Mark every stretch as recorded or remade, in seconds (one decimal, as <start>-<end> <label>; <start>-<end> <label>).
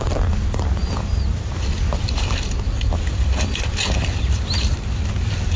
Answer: 0.0-5.6 recorded